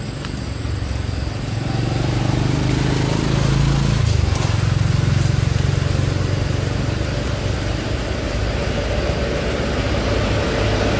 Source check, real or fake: real